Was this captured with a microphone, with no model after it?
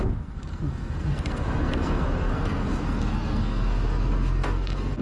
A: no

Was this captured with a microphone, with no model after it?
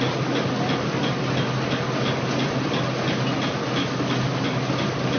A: yes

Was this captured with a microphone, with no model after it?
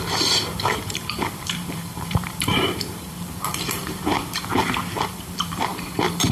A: no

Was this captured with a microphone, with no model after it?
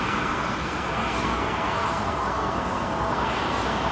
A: no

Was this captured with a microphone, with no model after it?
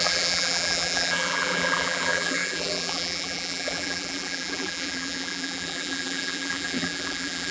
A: no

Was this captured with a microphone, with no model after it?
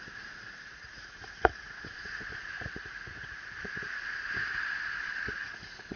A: no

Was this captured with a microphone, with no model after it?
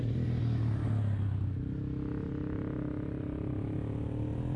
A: yes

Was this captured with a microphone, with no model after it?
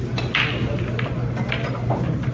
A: yes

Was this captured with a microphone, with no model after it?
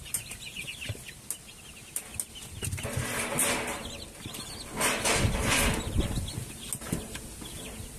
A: yes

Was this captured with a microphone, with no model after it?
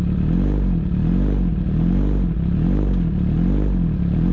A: yes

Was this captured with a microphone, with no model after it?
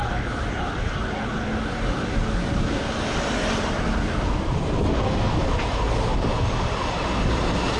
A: yes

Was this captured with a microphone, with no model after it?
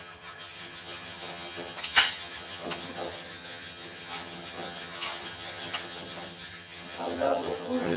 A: no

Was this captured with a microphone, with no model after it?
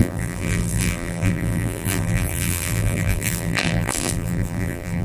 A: no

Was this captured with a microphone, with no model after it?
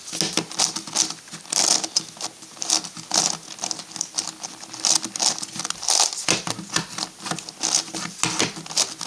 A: yes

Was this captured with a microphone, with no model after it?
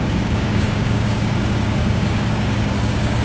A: no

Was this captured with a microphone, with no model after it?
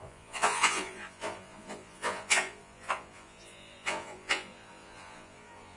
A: no